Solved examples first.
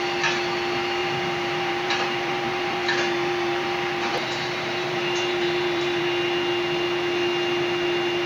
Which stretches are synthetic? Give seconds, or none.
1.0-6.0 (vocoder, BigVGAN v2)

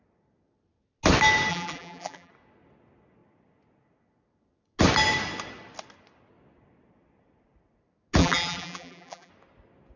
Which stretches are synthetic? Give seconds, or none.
1.5-2.3 (vocoder, BigVGAN v2); 8.2-9.3

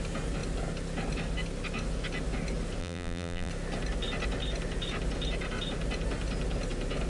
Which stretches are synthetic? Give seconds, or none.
2.8-3.5 (vocoder, BigVGAN v2)

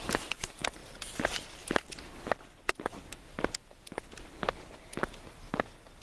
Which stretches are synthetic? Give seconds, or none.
0.0-0.8 (vocoder, BigVGAN v2); 4.4-4.9

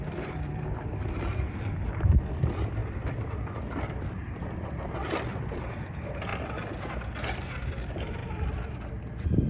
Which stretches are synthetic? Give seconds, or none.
0.0-6.3 (vocoder, BigVGAN v2); 7.4-9.5